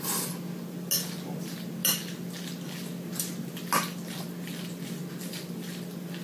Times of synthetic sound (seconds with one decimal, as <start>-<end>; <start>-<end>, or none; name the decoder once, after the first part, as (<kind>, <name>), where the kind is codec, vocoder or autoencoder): none

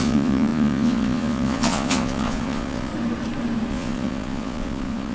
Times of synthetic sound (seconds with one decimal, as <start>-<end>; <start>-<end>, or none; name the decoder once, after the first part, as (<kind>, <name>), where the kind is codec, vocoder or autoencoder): 0.0-2.9 (vocoder, Vocos); 3.7-5.1